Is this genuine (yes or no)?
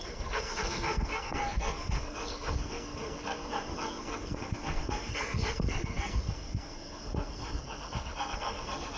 no